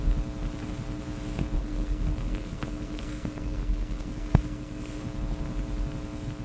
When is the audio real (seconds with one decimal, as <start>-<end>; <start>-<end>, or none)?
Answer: 0.0-1.6; 5.0-6.4